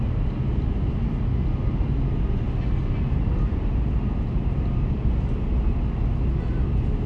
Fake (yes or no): no